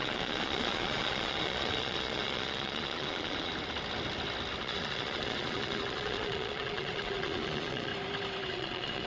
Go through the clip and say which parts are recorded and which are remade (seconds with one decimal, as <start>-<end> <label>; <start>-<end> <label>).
0.0-3.5 remade; 3.5-4.6 recorded; 4.6-7.9 remade; 7.9-8.5 recorded; 8.5-9.1 remade